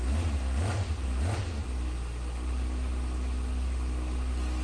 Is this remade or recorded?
recorded